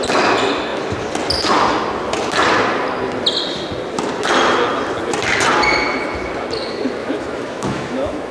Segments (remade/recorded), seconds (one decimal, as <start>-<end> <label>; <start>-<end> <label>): 0.0-7.0 recorded; 7.0-8.3 remade